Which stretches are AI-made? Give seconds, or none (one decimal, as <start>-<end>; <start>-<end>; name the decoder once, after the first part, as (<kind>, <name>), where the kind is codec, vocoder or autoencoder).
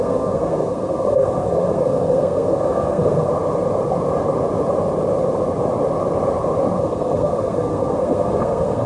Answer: 0.0-3.3 (codec, SNAC); 6.8-8.9